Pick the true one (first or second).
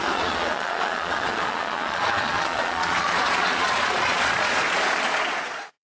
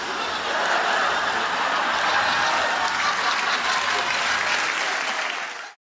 second